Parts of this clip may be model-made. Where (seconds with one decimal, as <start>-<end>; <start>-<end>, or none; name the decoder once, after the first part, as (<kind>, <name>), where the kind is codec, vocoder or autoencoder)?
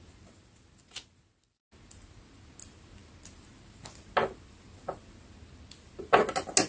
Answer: none